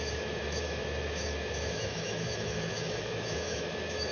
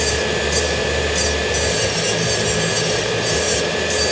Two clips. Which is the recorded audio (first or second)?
second